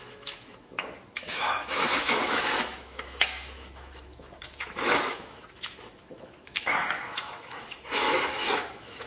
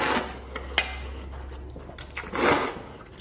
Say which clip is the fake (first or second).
first